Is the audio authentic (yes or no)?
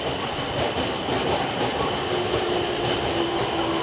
yes